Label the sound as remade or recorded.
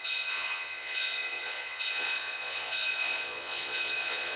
remade